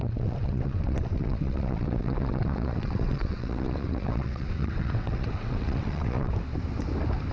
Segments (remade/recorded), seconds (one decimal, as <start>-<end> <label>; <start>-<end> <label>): 0.0-6.3 remade; 6.3-7.3 recorded